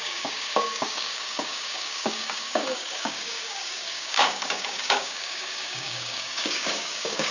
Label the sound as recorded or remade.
remade